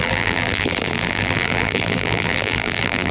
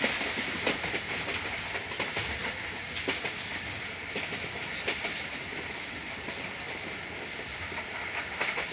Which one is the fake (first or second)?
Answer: first